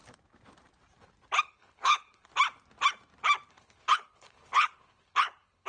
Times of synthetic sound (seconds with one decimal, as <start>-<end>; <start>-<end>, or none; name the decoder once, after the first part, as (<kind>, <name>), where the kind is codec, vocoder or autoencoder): 1.4-2.3 (codec, HILCodec); 3.5-5.7